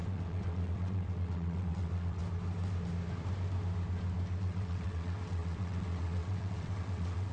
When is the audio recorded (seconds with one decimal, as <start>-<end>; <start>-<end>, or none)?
2.2-4.4